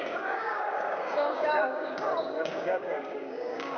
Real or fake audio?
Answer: fake